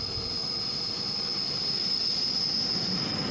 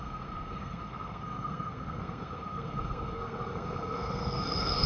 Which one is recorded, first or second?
first